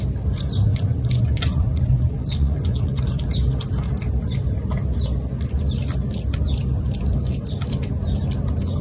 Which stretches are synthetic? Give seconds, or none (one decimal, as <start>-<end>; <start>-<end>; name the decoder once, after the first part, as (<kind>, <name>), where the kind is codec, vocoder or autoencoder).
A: 0.7-3.0 (vocoder, Vocos)